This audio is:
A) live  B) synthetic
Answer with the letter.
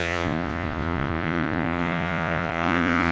B